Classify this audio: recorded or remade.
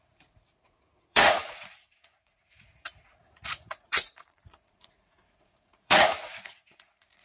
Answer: remade